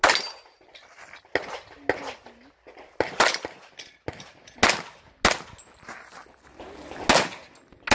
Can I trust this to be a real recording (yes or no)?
yes